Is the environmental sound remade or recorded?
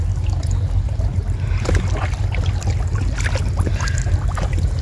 recorded